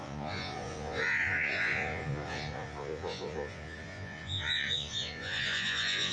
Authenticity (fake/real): fake